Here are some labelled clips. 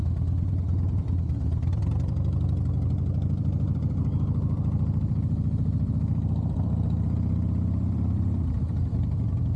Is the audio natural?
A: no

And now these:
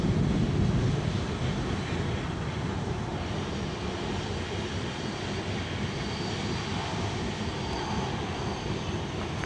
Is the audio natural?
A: yes